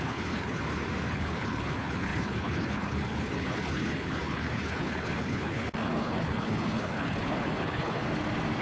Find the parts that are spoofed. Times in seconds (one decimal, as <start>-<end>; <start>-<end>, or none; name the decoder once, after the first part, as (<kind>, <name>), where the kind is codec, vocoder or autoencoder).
0.0-0.6 (codec, HILCodec); 1.1-8.0

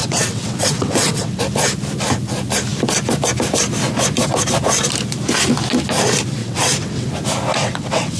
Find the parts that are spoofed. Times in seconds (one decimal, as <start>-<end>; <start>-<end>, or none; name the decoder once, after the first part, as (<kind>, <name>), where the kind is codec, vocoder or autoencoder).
0.0-1.4 (vocoder, WaveNeXt); 6.4-7.1; 7.5-8.2

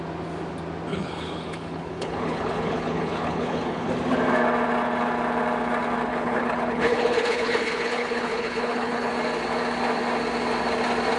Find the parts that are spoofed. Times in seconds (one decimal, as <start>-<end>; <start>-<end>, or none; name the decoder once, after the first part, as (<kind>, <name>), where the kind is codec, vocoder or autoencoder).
0.9-3.9 (codec, HILCodec); 6.1-9.1